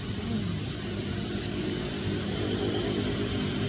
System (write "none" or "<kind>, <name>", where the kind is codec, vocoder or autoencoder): none